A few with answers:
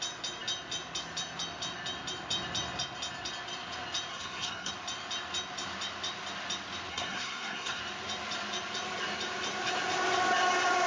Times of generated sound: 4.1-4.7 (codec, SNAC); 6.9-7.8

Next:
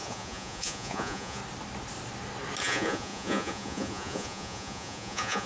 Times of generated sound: 0.0-1.4 (vocoder, Vocos); 2.6-5.5

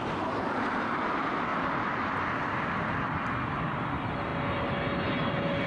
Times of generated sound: none

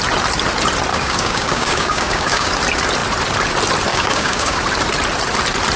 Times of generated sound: 0.9-2.5 (codec, DAC); 3.9-4.6

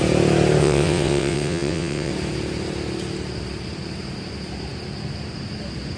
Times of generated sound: 0.6-2.1 (vocoder, WaveNeXt)

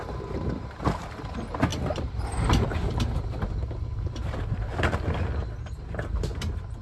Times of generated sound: 1.7-4.8 (vocoder, BigVGAN v2)

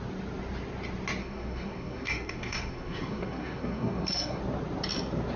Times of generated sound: 1.2-4.4 (codec, SNAC)